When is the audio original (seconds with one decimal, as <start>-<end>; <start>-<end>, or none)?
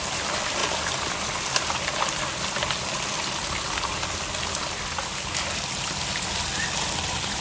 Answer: 0.0-7.4